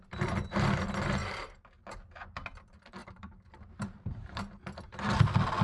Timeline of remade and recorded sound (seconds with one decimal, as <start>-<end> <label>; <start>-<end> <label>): 0.0-1.2 recorded; 1.2-1.8 remade; 1.8-3.0 recorded; 3.0-4.6 remade; 4.6-5.6 recorded